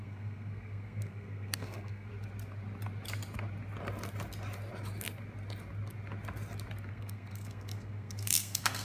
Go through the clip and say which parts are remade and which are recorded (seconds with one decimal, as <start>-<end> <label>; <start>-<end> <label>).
0.0-2.1 remade; 2.1-6.9 recorded; 6.9-8.8 remade